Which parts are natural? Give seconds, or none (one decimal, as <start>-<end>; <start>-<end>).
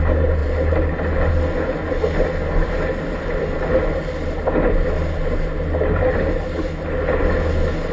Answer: 0.0-0.4; 1.3-7.9